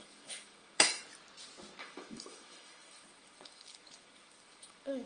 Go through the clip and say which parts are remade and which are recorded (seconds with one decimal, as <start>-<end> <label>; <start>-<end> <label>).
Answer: 0.0-1.0 remade; 1.0-1.8 recorded; 1.8-5.1 remade